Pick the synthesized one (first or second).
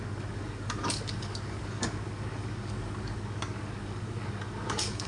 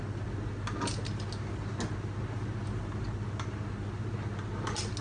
first